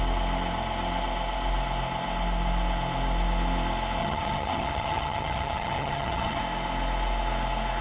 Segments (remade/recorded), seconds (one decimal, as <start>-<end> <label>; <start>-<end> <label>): 0.0-4.0 recorded; 4.0-6.4 remade; 6.4-7.8 recorded